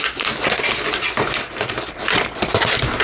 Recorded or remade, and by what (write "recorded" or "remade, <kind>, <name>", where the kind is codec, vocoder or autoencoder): recorded